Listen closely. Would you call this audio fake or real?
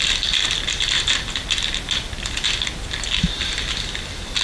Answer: real